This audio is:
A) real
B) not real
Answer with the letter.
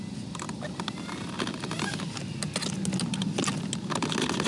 A